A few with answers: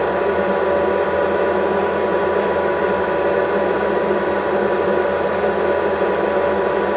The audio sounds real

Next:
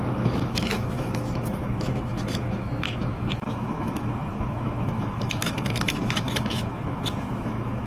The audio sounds fake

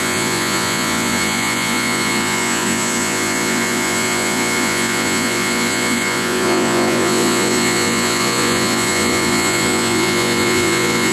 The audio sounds fake